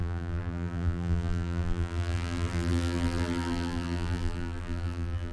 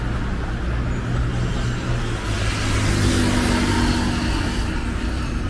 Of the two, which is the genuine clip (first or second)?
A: second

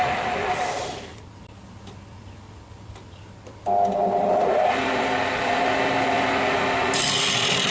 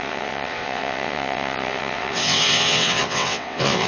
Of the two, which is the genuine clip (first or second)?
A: first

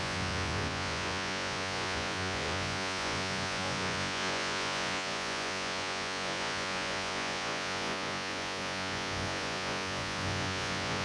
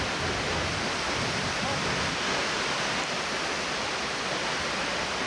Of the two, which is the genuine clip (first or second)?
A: second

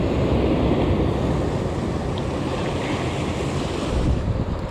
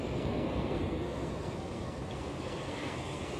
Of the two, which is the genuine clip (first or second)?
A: first